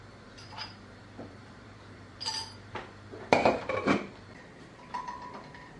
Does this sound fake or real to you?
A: fake